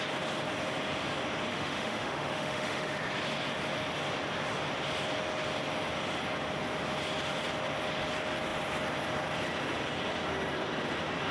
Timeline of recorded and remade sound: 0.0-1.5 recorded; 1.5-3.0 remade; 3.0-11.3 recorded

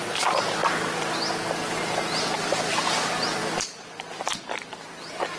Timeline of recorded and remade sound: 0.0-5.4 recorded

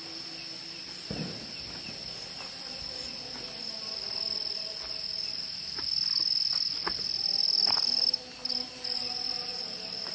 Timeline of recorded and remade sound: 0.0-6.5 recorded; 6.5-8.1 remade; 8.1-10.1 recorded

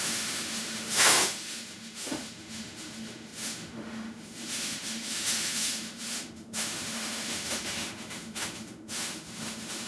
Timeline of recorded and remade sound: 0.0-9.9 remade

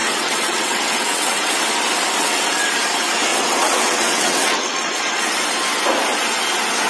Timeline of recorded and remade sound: 0.0-1.6 remade; 1.6-2.2 recorded; 2.2-2.7 remade; 2.7-3.3 recorded; 3.3-5.2 remade; 5.2-6.9 recorded

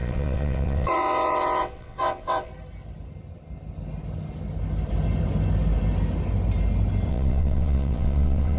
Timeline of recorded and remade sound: 0.0-2.5 remade; 2.5-7.1 recorded; 7.1-8.6 remade

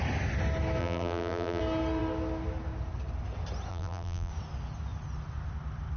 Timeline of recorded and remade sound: 0.0-0.8 recorded; 0.8-1.6 remade; 1.6-3.7 recorded; 3.7-4.3 remade; 4.3-6.0 recorded

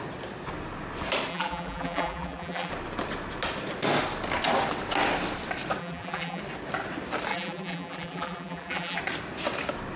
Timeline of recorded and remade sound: 0.0-1.3 recorded; 1.3-2.7 remade; 2.7-5.8 recorded; 5.8-6.4 remade; 6.4-7.3 recorded; 7.3-9.0 remade; 9.0-10.0 recorded